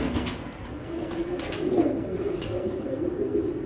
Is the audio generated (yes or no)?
yes